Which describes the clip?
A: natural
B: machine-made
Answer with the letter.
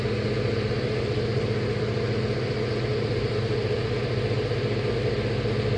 A